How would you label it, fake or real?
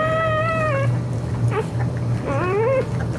real